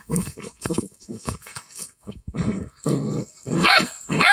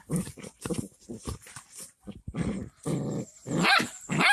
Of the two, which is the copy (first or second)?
first